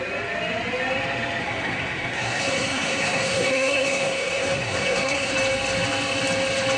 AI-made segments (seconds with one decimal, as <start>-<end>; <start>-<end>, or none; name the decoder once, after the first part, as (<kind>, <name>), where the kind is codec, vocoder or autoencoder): 1.4-5.3 (codec, SNAC)